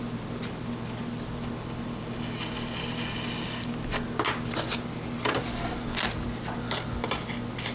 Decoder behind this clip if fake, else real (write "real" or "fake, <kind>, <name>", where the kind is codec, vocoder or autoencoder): real